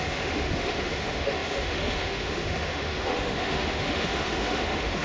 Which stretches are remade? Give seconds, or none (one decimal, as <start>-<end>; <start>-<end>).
0.0-5.0